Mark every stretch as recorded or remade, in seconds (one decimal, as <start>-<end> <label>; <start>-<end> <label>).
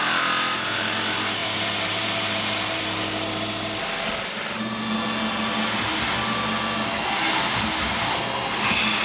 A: 0.0-1.4 recorded; 1.4-2.8 remade; 2.8-9.0 recorded